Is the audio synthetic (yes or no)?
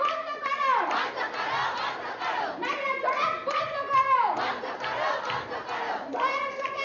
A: no